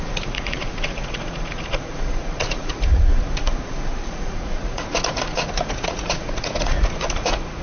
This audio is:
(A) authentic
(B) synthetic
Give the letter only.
B